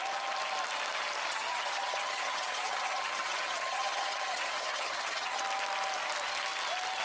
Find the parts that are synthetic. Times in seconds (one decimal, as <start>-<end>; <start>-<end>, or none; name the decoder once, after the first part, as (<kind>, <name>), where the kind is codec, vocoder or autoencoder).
1.3-5.4 (vocoder, HiFi-GAN)